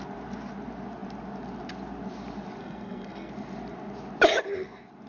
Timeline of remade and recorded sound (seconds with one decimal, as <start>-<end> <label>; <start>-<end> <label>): 0.0-2.6 recorded; 2.6-3.3 remade; 3.3-5.1 recorded